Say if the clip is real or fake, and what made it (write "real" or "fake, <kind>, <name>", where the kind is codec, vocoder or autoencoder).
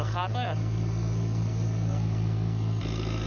fake, codec, SNAC